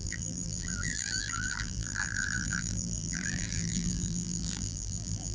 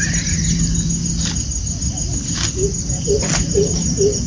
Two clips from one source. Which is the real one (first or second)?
second